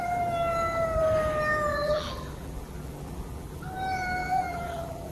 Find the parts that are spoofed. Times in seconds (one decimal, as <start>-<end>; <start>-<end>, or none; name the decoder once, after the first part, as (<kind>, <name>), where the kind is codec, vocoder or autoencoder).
1.7-3.7 (vocoder, BigVGAN v2); 4.2-5.1